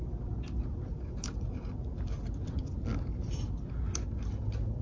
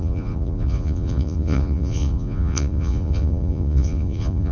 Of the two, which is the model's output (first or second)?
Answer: second